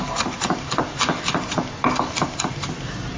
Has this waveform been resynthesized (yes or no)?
no